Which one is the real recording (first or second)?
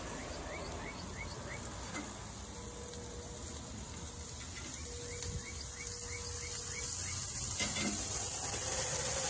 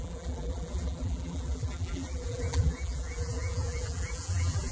first